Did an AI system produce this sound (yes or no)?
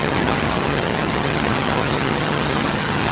yes